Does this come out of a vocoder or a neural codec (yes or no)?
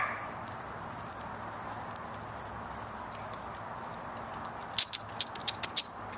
no